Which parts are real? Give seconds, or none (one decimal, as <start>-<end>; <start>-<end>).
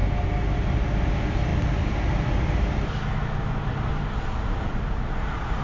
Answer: 0.0-5.6